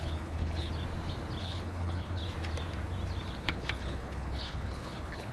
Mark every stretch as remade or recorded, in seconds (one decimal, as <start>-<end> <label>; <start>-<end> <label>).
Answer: 0.0-0.7 remade; 0.7-1.4 recorded; 1.4-2.2 remade; 2.2-3.4 recorded; 3.4-5.3 remade